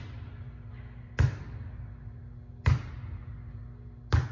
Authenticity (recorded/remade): recorded